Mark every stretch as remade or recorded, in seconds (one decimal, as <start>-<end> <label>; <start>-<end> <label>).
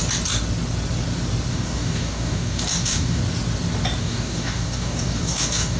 0.0-1.5 recorded; 1.5-3.2 remade; 3.2-4.0 recorded; 4.0-5.8 remade